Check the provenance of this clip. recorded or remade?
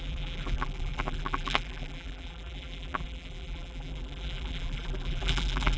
remade